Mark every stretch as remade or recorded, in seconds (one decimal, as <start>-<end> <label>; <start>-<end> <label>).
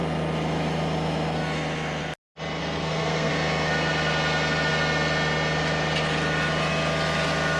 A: 0.0-2.6 recorded; 2.6-3.3 remade; 3.3-7.6 recorded